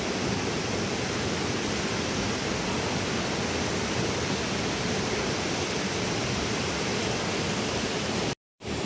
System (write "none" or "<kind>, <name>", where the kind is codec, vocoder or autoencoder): none